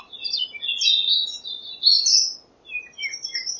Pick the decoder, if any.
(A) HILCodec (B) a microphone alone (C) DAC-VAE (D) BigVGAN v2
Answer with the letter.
B